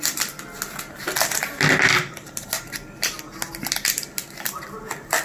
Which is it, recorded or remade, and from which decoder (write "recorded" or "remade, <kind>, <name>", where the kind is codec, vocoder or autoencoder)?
recorded